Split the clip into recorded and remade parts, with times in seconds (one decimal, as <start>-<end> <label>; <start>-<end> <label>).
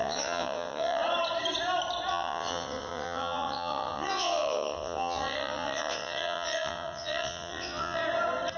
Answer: 0.0-1.0 remade; 1.0-2.1 recorded; 2.1-8.0 remade; 8.0-8.6 recorded